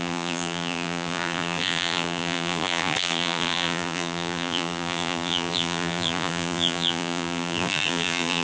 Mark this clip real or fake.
fake